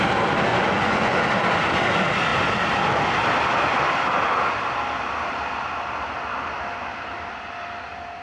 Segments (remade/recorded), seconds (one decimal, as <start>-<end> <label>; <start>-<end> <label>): 0.0-0.5 recorded; 0.5-1.2 remade; 1.2-8.2 recorded